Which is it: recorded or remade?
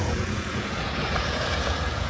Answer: remade